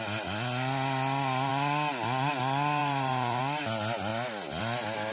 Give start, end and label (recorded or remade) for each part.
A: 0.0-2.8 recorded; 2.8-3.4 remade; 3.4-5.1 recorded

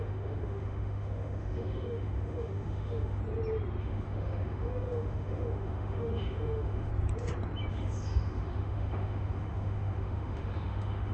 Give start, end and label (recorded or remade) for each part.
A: 0.0-3.2 remade; 3.2-3.8 recorded; 3.8-6.9 remade; 6.9-7.7 recorded; 7.7-11.1 remade

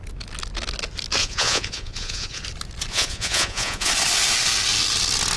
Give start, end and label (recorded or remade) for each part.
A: 0.0-1.2 recorded; 1.2-2.4 remade; 2.4-2.9 recorded; 2.9-3.9 remade; 3.9-5.4 recorded

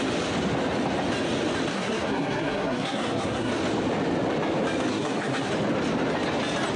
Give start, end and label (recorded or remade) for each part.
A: 0.0-1.7 recorded; 1.7-3.5 remade; 3.5-4.9 recorded; 4.9-5.5 remade; 5.5-6.8 recorded

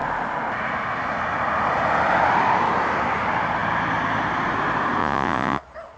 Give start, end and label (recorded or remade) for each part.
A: 0.0-5.0 recorded; 5.0-5.6 remade; 5.6-6.0 recorded

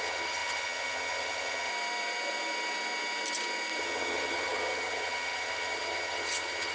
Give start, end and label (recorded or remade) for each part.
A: 0.0-1.7 remade; 1.7-3.8 recorded; 3.8-6.7 remade

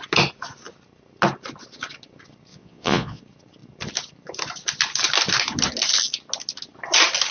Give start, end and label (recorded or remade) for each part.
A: 0.0-2.5 recorded; 2.5-3.2 remade; 3.2-7.3 recorded

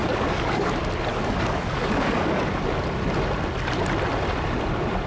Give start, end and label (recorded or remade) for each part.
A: 0.0-0.7 remade; 0.7-1.1 recorded; 1.1-2.4 remade; 2.4-5.1 recorded